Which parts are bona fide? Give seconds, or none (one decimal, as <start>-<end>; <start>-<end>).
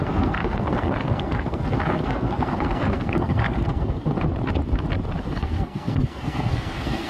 4.3-5.2